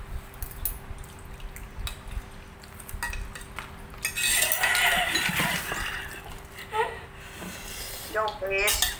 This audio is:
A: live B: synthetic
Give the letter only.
A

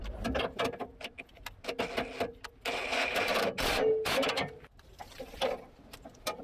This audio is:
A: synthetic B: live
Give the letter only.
B